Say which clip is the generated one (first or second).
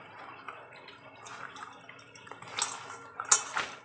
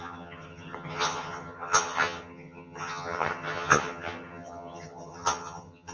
second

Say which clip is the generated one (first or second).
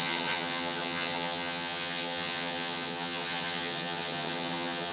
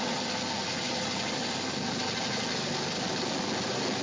first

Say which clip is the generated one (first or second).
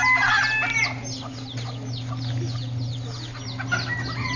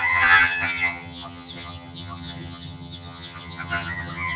second